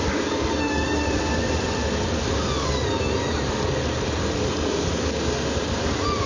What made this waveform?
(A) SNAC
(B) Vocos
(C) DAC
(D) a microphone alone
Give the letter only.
D